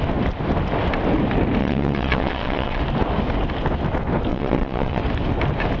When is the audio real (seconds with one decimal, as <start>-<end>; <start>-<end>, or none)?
0.0-1.6; 2.8-4.3; 5.0-5.8